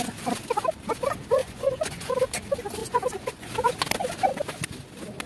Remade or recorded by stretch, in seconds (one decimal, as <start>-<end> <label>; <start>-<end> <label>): 0.0-1.4 recorded; 1.4-2.1 remade; 2.1-2.8 recorded; 2.8-3.5 remade; 3.5-5.3 recorded